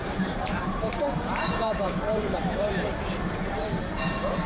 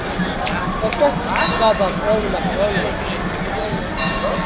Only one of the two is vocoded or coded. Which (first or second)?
first